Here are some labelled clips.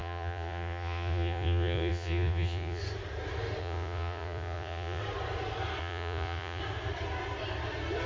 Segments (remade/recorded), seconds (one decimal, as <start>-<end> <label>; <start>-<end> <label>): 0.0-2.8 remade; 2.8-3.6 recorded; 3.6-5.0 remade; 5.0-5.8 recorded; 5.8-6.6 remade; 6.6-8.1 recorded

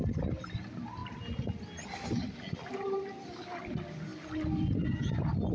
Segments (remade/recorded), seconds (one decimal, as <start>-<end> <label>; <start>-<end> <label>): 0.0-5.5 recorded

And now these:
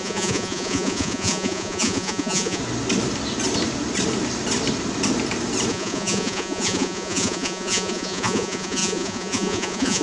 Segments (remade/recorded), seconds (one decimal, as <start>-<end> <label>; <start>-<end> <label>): 0.0-2.6 remade; 2.6-5.7 recorded; 5.7-10.0 remade

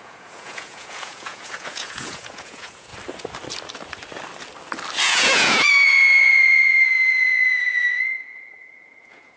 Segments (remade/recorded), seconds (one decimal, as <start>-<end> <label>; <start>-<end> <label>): 0.0-2.9 remade; 2.9-5.0 recorded; 5.0-9.4 remade

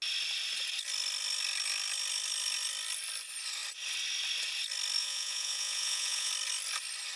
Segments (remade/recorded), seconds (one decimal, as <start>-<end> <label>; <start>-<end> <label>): 0.0-5.0 recorded; 5.0-6.3 remade; 6.3-7.2 recorded

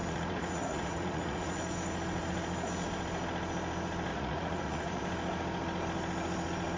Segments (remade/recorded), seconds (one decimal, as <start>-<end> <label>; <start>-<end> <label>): 0.0-1.6 remade; 1.6-4.1 recorded; 4.1-5.0 remade; 5.0-6.8 recorded

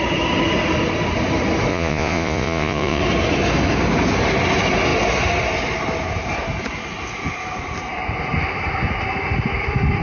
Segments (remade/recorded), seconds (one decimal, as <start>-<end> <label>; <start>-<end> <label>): 0.0-1.7 recorded; 1.7-3.0 remade; 3.0-10.0 recorded

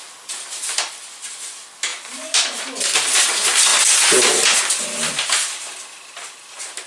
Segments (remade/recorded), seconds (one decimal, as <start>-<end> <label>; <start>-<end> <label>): 0.0-6.9 recorded